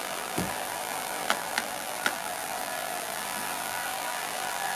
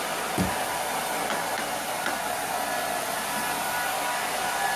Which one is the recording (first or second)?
second